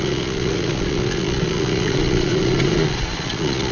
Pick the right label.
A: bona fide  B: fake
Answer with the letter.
B